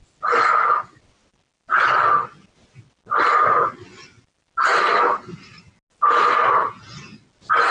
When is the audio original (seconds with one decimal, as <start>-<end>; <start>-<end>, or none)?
0.0-7.7